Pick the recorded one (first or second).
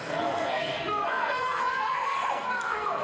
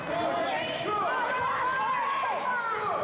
second